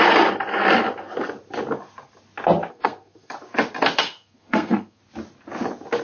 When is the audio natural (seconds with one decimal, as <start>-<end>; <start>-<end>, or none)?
0.0-2.7; 3.3-4.0; 5.0-6.0